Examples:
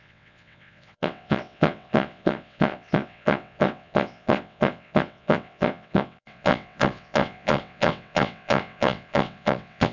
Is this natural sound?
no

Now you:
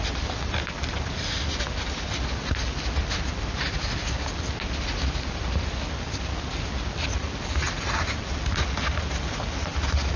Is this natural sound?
yes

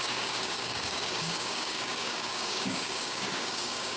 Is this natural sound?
no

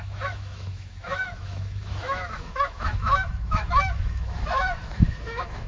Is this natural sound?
no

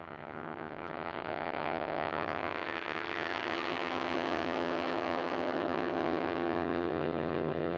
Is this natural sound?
no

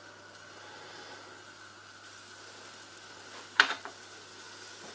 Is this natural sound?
yes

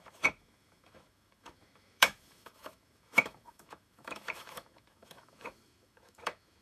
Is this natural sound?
no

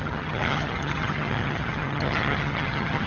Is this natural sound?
no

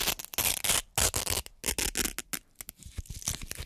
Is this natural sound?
yes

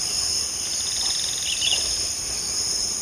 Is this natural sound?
yes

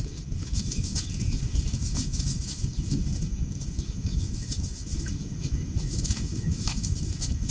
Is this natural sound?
no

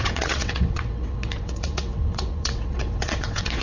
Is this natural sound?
no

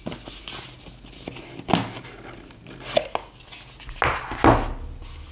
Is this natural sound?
yes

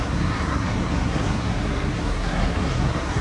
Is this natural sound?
no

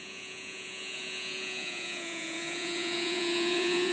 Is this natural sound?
no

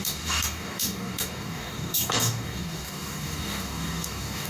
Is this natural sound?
no